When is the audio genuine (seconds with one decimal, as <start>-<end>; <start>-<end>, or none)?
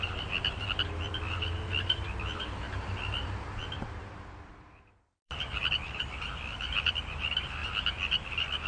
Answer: none